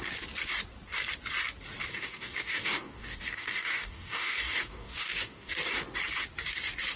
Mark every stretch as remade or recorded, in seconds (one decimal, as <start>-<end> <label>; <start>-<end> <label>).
0.0-1.9 recorded; 1.9-5.5 remade; 5.5-7.0 recorded